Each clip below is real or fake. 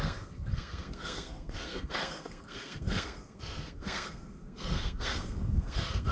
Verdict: fake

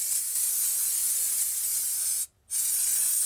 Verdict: real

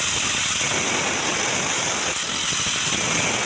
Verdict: real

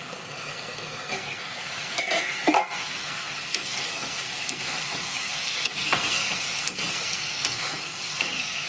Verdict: fake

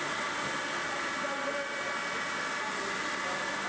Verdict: real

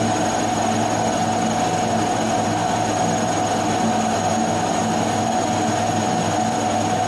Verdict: real